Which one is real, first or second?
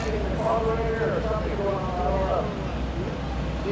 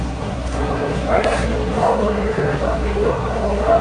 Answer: first